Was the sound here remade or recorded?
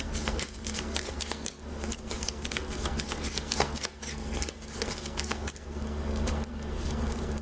remade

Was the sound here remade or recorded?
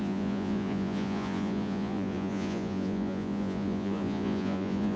remade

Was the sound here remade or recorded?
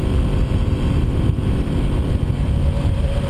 remade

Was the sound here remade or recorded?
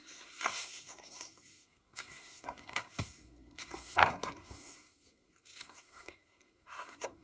remade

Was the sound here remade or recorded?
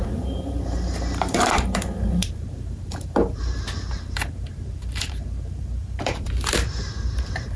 remade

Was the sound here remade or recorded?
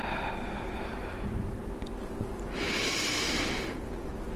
recorded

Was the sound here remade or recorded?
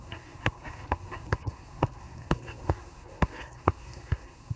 remade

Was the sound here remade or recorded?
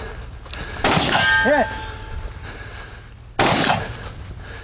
recorded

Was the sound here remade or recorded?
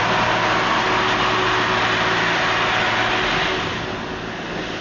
recorded